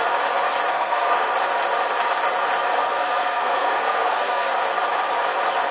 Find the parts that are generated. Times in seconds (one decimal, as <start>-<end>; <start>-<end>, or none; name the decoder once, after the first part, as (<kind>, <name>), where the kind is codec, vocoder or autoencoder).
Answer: 0.7-1.3 (codec, SNAC); 2.7-4.5